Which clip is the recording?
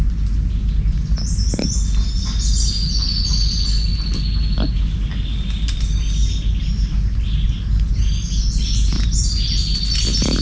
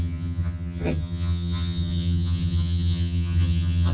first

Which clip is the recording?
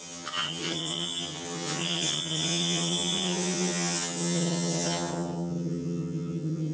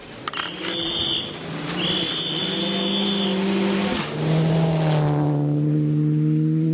second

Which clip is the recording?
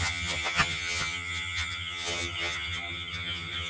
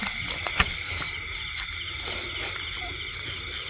second